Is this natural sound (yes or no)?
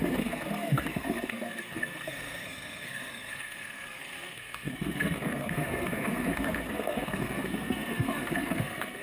no